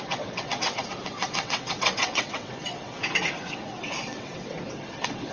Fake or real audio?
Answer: fake